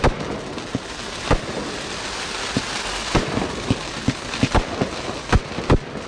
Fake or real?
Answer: real